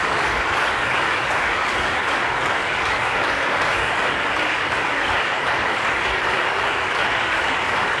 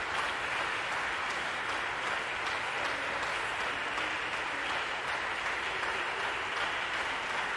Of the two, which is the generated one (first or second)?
first